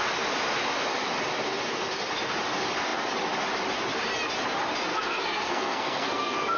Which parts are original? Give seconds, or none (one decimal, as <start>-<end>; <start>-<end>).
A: 0.0-4.9

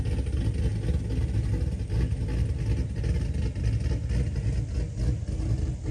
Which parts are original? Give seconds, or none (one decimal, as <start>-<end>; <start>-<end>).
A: 0.0-5.9

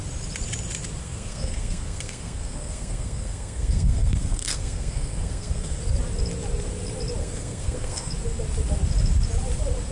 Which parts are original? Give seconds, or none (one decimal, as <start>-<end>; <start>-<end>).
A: 0.0-1.0; 5.8-7.2; 8.1-9.9

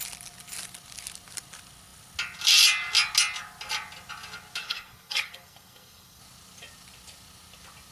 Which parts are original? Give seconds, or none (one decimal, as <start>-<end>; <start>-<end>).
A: 0.0-4.6; 6.2-7.9

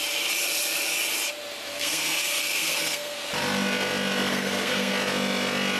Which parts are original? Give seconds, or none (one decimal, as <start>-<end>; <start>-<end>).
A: 0.0-1.7; 3.3-4.3; 4.9-5.8

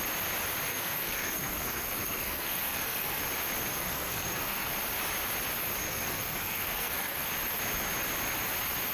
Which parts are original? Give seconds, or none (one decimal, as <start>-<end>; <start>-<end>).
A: 0.0-0.7; 3.2-3.7; 4.7-5.8; 7.3-8.9

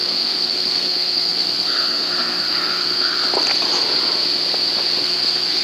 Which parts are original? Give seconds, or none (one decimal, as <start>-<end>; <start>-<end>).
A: 3.2-5.0